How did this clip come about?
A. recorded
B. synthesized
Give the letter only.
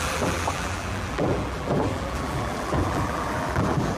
B